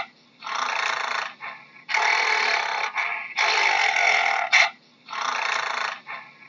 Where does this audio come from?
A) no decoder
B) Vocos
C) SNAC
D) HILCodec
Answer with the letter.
A